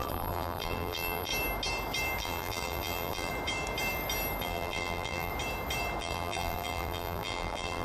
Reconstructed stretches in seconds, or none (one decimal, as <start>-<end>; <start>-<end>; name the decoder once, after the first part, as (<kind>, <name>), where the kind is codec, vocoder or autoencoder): 0.0-1.3 (vocoder, BigVGAN v2); 2.2-3.3; 4.4-5.3; 6.0-7.8